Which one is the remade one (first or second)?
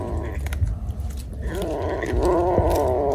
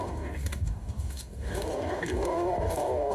second